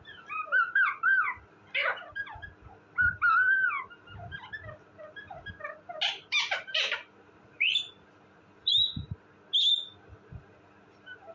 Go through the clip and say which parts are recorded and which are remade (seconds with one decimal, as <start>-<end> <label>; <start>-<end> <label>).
0.0-1.9 remade; 1.9-6.4 recorded; 6.4-8.7 remade; 8.7-10.4 recorded; 10.4-11.3 remade